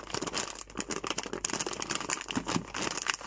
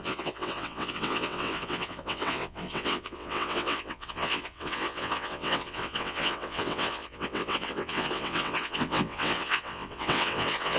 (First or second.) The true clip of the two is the first